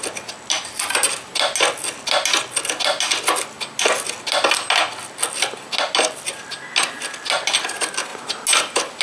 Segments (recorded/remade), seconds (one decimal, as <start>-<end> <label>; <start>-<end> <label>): 0.0-9.0 recorded